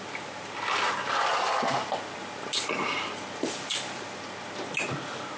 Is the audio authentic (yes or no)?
yes